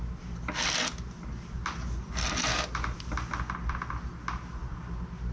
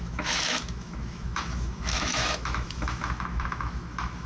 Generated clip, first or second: second